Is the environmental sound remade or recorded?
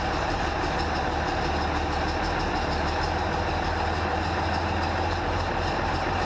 recorded